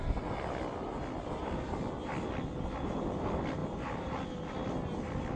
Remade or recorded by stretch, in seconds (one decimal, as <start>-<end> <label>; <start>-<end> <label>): 0.0-5.4 recorded